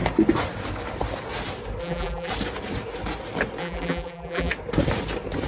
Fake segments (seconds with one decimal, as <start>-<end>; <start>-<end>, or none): 1.8-2.3; 3.6-4.5